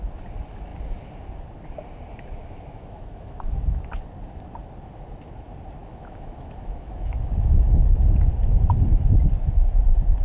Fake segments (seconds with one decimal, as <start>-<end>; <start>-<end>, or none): 2.4-3.9; 5.8-8.0